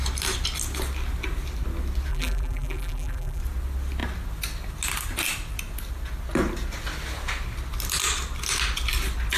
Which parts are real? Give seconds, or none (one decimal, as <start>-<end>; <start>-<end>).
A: 0.0-2.1; 3.4-9.4